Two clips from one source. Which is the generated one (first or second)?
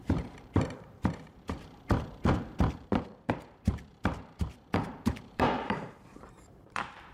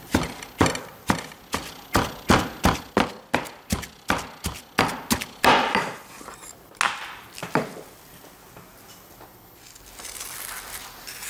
first